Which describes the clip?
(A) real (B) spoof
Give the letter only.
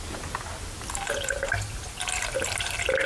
A